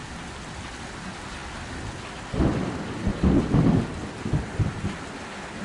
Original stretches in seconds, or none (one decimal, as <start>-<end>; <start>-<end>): 0.0-5.6